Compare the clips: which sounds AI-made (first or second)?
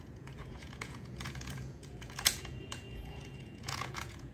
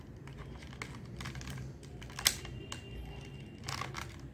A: first